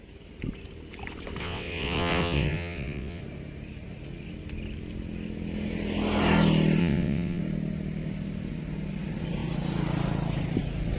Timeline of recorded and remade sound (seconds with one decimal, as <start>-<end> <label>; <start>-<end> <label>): 0.0-1.4 recorded; 1.4-3.2 remade; 3.2-6.8 recorded; 6.8-7.4 remade; 7.4-11.0 recorded